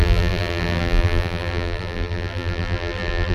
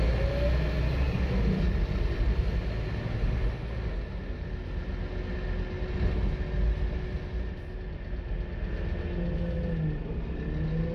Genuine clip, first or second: second